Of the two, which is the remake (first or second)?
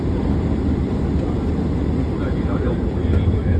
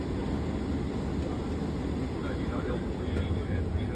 first